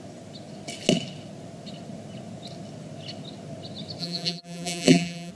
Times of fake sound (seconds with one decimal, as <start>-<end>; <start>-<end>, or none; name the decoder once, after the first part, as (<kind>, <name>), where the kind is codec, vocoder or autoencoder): 4.0-5.3 (vocoder, BigVGAN v2)